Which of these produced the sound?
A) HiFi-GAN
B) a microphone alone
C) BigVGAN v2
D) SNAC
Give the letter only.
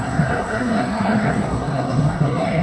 D